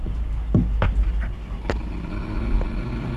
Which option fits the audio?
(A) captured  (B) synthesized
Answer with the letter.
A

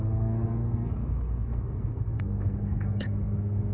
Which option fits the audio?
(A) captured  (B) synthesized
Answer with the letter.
B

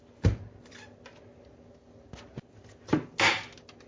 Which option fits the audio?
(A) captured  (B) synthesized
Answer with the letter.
A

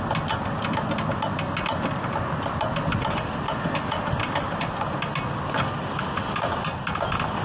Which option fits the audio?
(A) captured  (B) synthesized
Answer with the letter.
A